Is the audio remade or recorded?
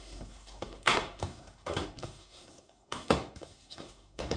remade